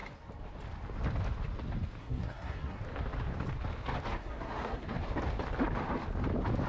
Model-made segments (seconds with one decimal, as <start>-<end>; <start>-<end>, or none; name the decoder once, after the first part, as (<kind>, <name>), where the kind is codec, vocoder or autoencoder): 2.0-2.8 (codec, SNAC); 4.2-5.0